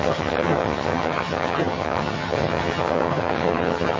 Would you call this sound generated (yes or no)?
yes